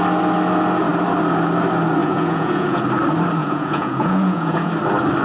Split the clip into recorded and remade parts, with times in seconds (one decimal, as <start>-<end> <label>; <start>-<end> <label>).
0.0-2.0 recorded; 2.0-2.8 remade; 2.8-3.4 recorded; 3.4-4.7 remade; 4.7-5.2 recorded